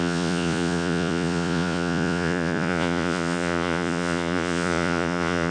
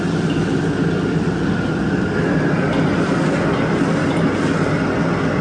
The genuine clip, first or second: second